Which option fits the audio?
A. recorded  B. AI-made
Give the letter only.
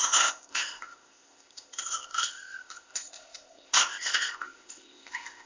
B